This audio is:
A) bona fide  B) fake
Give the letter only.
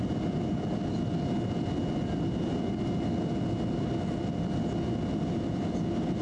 A